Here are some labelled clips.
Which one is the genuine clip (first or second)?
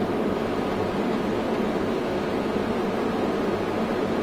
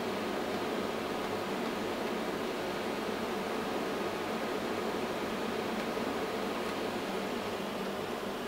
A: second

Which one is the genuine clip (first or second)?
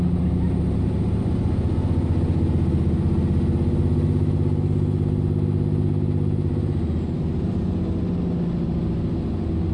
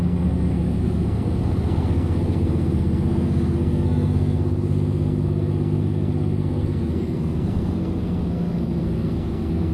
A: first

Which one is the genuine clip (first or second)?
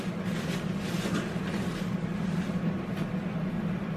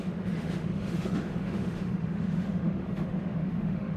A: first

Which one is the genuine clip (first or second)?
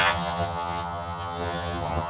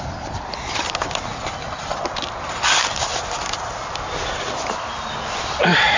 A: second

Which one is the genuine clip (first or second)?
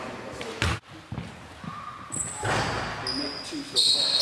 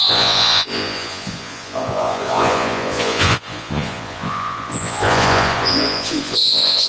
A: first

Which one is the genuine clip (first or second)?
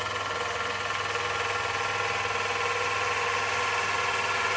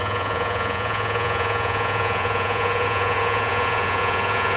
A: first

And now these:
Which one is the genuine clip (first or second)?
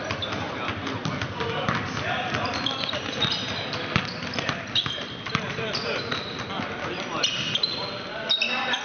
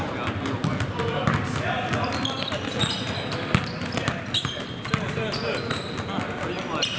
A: second